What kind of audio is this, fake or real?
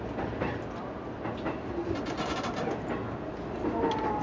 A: real